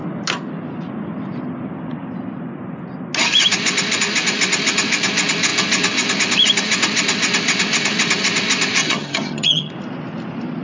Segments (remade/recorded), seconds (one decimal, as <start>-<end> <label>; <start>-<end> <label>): 0.0-8.8 recorded; 8.8-9.7 remade; 9.7-10.6 recorded